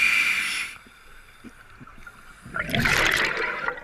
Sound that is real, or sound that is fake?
real